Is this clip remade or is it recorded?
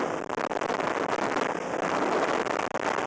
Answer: recorded